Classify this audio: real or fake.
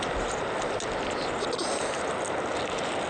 real